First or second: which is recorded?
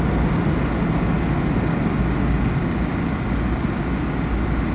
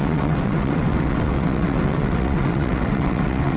first